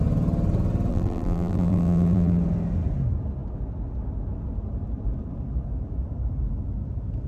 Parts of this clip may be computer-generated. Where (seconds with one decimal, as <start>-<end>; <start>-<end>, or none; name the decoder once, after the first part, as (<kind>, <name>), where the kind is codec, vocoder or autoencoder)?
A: 0.9-2.4 (vocoder, BigVGAN v2)